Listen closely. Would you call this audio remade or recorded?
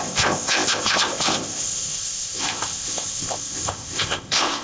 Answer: remade